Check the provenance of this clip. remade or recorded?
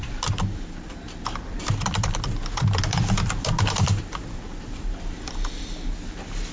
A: remade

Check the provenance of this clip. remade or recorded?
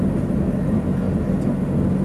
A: recorded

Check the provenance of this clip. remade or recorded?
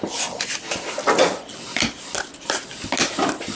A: recorded